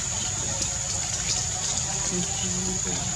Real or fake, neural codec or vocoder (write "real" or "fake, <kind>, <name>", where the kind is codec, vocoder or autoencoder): real